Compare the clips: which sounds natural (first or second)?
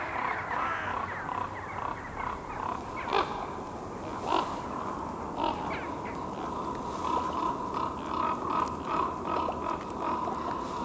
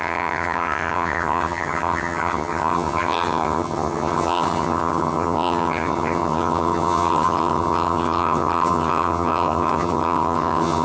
first